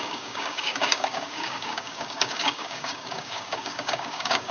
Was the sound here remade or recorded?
remade